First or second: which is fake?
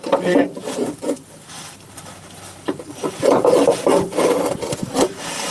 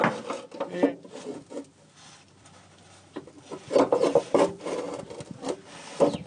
first